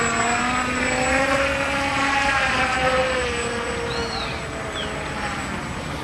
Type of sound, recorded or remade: recorded